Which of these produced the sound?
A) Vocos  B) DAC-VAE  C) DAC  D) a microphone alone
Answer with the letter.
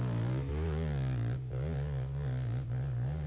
D